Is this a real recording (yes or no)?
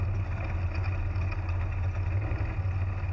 yes